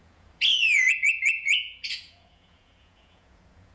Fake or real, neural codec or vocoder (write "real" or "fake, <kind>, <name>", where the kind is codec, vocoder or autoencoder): fake, vocoder, Vocos